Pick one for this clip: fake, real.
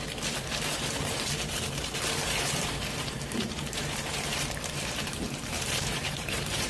fake